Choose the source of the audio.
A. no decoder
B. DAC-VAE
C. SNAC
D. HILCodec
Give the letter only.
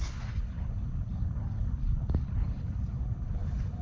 D